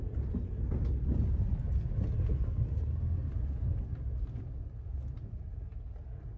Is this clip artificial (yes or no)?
no